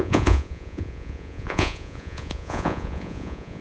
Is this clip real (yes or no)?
no